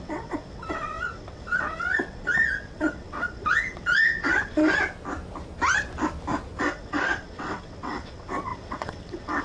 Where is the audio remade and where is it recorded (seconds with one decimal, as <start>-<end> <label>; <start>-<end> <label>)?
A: 0.0-4.6 remade; 4.6-6.6 recorded; 6.6-9.4 remade